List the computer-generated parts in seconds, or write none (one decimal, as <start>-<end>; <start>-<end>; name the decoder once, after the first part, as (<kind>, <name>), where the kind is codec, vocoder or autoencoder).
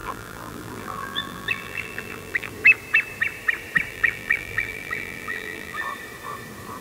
0.0-2.5 (vocoder, BigVGAN v2); 3.9-5.8